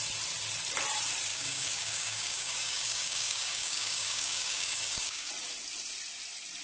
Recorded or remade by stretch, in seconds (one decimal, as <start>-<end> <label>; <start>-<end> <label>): 0.0-1.3 recorded; 1.3-5.3 remade; 5.3-6.6 recorded